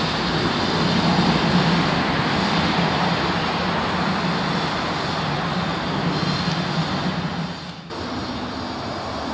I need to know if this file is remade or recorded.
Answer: recorded